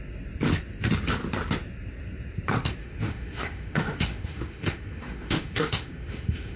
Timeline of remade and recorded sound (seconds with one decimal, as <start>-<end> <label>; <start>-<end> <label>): 0.0-2.8 recorded; 2.8-6.6 remade